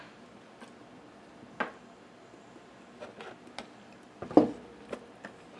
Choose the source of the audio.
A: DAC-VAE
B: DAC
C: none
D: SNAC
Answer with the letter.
C